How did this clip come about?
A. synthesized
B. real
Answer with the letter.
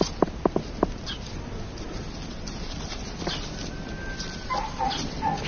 B